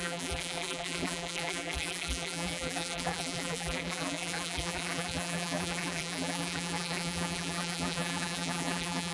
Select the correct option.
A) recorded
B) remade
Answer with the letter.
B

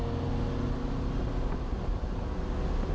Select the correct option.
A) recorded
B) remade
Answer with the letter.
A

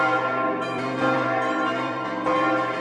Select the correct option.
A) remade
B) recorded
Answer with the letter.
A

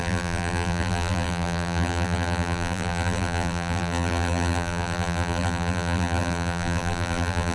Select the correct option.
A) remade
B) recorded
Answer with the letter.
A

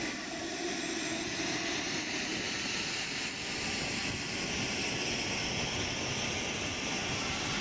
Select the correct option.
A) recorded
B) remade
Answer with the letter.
A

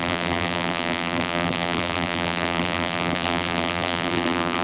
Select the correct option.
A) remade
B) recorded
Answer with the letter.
A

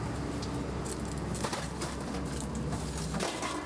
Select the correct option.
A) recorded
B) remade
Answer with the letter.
A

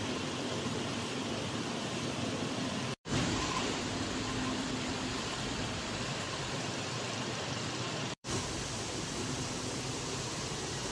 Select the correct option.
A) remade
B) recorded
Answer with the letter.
A